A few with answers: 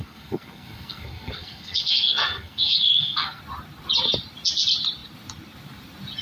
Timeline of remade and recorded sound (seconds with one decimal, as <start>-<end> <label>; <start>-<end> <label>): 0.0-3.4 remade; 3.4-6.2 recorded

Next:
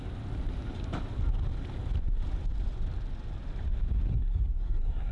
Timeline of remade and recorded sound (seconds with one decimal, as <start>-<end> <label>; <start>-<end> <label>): 0.0-4.1 recorded; 4.1-5.1 remade

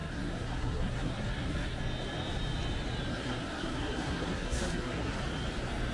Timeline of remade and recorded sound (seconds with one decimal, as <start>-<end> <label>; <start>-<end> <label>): 0.0-1.8 remade; 1.8-3.1 recorded; 3.1-5.1 remade; 5.1-5.9 recorded

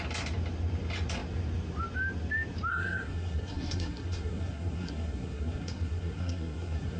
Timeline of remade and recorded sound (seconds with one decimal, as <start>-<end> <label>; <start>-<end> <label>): 0.0-2.7 recorded; 2.7-7.0 remade

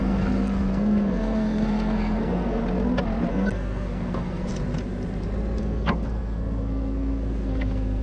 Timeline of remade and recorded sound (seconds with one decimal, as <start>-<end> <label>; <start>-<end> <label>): 0.0-2.6 remade; 2.6-3.3 recorded; 3.3-4.5 remade; 4.5-5.6 recorded; 5.6-8.0 remade